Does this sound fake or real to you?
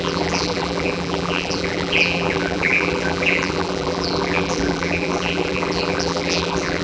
fake